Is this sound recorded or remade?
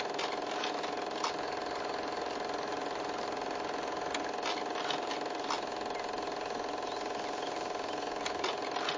recorded